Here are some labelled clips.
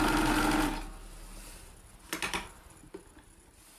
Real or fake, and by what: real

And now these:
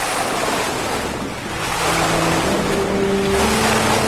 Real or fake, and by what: real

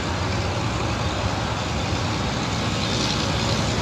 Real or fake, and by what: real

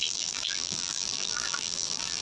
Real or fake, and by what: fake, vocoder, BigVGAN v2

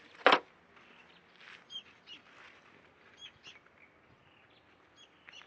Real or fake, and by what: real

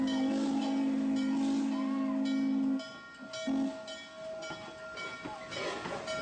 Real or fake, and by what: real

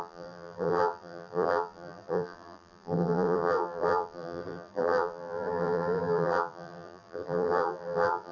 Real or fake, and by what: fake, vocoder, BigVGAN v2